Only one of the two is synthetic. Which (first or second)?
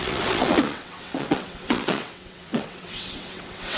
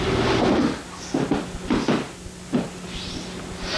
first